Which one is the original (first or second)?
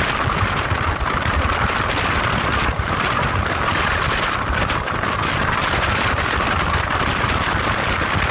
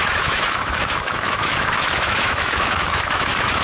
first